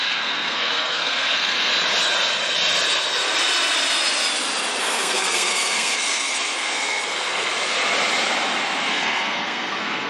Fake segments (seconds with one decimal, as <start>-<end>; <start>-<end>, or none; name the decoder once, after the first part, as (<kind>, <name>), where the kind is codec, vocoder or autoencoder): 0.0-1.7 (codec, SNAC); 4.8-7.5; 8.9-10.1